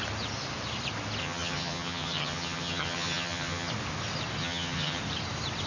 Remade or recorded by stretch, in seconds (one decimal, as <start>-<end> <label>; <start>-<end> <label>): 0.0-1.2 recorded; 1.2-3.7 remade; 3.7-4.4 recorded; 4.4-5.0 remade; 5.0-5.7 recorded